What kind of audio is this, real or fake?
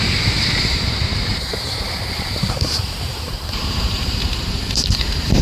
fake